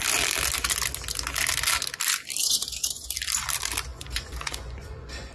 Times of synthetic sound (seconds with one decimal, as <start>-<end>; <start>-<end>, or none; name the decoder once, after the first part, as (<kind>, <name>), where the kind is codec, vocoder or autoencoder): 2.4-3.1 (vocoder, Vocos); 3.9-5.3